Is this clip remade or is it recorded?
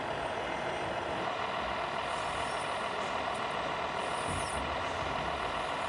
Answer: recorded